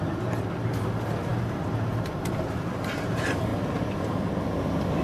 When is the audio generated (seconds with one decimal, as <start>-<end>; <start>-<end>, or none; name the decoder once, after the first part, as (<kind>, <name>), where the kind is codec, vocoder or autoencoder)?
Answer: none

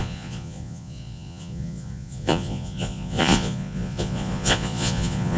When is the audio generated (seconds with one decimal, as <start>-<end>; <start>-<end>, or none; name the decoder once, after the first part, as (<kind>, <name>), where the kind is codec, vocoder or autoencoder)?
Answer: 0.0-5.4 (vocoder, Vocos)

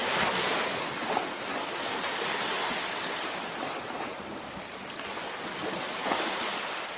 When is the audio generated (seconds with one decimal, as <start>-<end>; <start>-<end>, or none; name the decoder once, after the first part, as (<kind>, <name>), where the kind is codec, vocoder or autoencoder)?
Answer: none

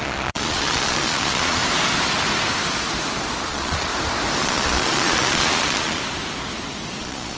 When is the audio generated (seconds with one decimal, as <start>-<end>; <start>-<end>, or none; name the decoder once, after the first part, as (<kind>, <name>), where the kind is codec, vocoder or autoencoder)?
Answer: 0.0-1.6 (vocoder, Vocos); 3.5-3.9; 4.4-6.0; 7.0-7.4

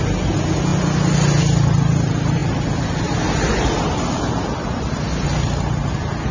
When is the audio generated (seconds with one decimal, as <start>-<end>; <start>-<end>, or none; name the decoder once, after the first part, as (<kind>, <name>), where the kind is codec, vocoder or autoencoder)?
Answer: none

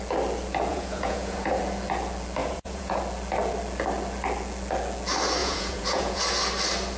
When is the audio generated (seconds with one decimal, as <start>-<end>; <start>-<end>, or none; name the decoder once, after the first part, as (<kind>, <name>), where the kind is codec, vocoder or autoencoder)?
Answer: 0.7-1.6 (vocoder, Vocos); 2.4-3.0; 5.4-6.2